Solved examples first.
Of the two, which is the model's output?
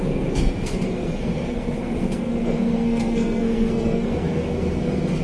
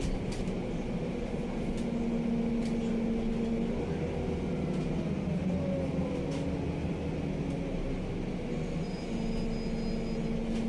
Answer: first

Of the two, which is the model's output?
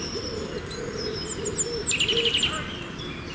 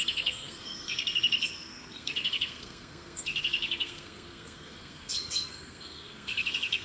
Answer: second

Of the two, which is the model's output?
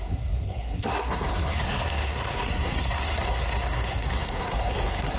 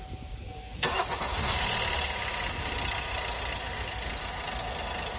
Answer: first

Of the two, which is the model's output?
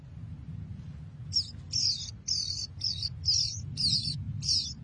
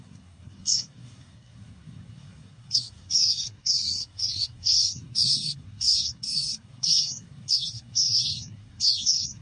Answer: second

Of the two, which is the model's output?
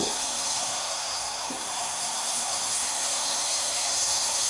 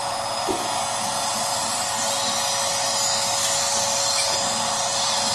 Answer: first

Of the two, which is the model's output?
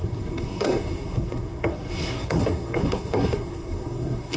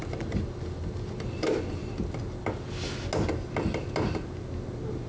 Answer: first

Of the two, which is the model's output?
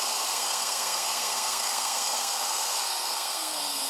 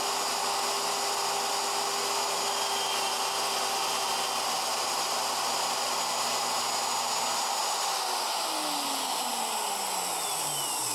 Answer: first